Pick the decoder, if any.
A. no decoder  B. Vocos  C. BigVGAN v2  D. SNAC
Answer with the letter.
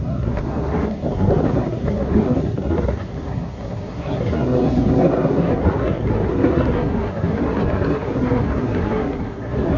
D